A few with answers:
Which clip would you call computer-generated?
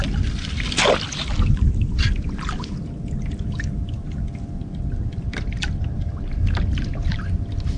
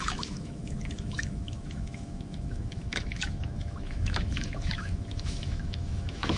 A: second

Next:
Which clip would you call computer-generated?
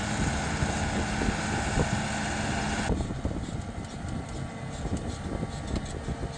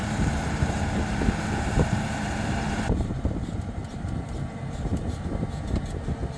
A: second